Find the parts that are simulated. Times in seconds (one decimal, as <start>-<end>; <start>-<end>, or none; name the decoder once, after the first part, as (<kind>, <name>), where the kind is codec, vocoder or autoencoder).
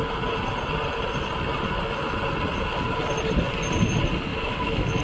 4.3-5.0 (autoencoder, DAC-VAE)